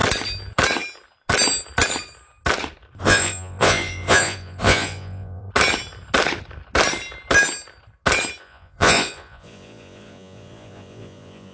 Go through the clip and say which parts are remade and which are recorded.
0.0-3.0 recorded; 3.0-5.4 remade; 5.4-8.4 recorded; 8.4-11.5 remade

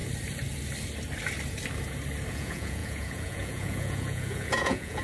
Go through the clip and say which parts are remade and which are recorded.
0.0-2.3 recorded; 2.3-5.0 remade

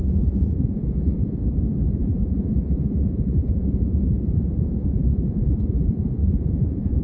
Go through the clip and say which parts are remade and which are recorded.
0.0-1.4 remade; 1.4-1.9 recorded; 1.9-7.0 remade

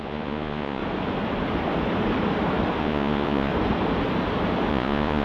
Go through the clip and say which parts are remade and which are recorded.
0.0-0.8 remade; 0.8-2.8 recorded; 2.8-3.5 remade; 3.5-4.7 recorded; 4.7-5.2 remade